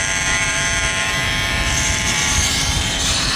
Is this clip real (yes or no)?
no